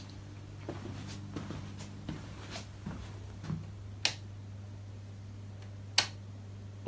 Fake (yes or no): no